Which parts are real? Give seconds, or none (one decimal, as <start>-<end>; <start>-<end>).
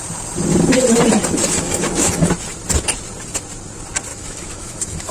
0.0-1.4; 2.3-4.1